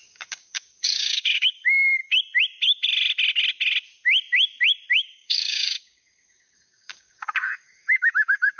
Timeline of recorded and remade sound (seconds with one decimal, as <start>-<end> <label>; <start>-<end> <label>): 0.0-2.0 remade; 2.0-4.9 recorded; 4.9-8.6 remade